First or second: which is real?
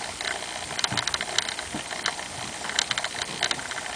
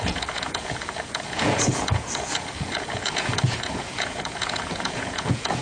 first